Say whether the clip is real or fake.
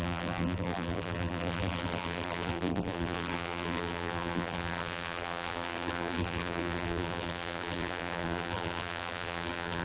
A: fake